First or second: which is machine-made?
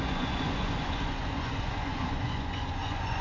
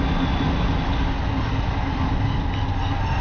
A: first